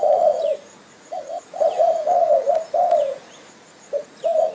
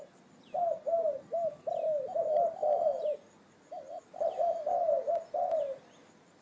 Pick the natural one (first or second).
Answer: second